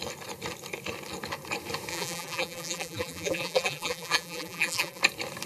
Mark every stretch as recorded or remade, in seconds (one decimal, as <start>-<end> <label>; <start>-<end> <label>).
0.0-1.9 recorded; 1.9-5.0 remade; 5.0-5.5 recorded